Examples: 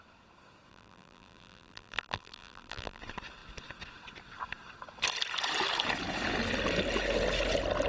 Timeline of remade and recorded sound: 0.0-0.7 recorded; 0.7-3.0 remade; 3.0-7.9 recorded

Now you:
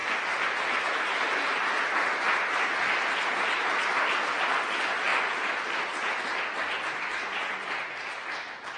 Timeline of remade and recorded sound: 0.0-1.0 remade; 1.0-5.1 recorded; 5.1-7.0 remade; 7.0-8.8 recorded